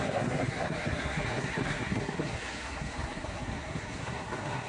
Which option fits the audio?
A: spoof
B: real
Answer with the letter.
A